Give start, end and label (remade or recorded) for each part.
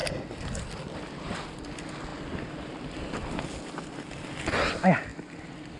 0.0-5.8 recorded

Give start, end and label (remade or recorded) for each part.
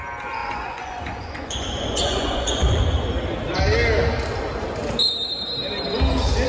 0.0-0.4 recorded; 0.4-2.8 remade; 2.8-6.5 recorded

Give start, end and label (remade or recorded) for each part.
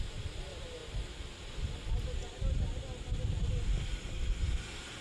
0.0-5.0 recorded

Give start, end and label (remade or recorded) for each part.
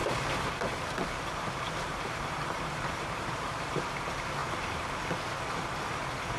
0.0-3.8 remade; 3.8-4.4 recorded; 4.4-5.0 remade; 5.0-6.4 recorded